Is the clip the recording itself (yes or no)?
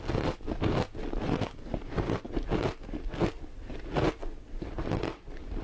yes